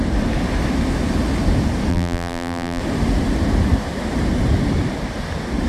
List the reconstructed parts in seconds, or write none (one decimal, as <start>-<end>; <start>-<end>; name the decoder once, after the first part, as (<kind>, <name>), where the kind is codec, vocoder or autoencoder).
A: 1.9-2.8 (vocoder, BigVGAN v2)

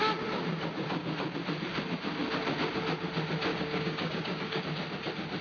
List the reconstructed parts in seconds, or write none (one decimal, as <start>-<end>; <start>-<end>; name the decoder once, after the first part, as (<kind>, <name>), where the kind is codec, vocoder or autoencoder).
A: 3.5-4.6 (codec, DAC)

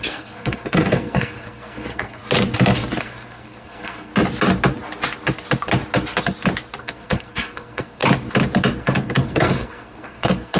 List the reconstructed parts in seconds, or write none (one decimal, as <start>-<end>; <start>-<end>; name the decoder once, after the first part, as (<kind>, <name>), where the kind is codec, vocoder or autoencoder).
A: 0.0-2.2 (codec, SNAC); 3.0-4.1; 6.8-8.0; 8.8-10.6

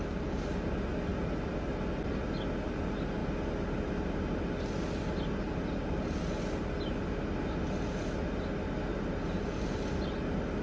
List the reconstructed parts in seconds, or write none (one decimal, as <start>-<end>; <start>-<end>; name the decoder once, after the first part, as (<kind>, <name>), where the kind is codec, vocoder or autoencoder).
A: 1.1-1.6 (vocoder, BigVGAN v2); 8.9-9.8